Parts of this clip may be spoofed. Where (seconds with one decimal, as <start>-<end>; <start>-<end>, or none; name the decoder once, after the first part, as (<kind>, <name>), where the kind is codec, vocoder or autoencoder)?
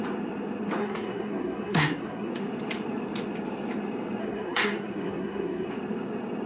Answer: 0.8-2.3 (codec, SNAC); 4.2-5.7